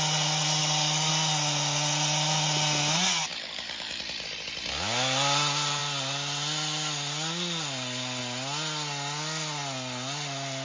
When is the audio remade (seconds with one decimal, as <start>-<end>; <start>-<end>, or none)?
0.6-1.1; 3.3-4.0